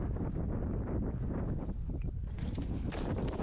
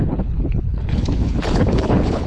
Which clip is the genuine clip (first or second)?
first